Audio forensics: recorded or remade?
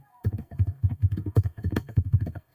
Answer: remade